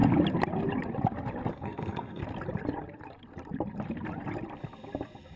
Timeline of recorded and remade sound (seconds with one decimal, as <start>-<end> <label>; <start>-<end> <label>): 0.0-1.5 recorded; 1.5-2.2 remade; 2.2-5.4 recorded